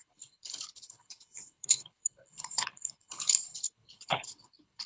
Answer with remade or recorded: remade